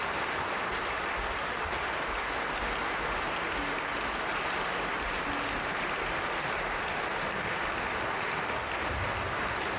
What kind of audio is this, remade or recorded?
recorded